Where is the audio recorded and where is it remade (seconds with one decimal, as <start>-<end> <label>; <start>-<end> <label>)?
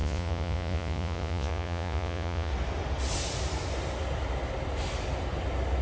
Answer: 0.0-2.5 remade; 2.5-5.8 recorded